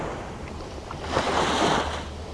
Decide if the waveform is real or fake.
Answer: real